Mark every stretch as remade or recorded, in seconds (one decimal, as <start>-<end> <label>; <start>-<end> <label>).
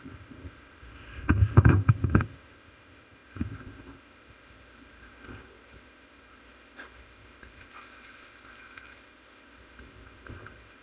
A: 0.0-10.8 remade